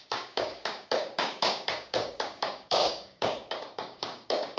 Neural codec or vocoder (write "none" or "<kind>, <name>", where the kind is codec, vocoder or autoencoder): codec, DAC